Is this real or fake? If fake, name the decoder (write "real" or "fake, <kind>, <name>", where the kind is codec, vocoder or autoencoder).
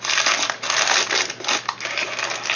real